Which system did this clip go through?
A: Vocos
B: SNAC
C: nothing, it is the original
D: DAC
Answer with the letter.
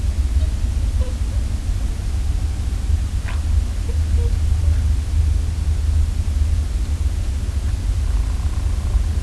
C